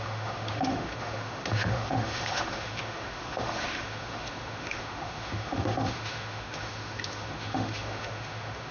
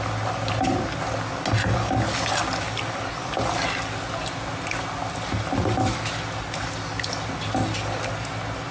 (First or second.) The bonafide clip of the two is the second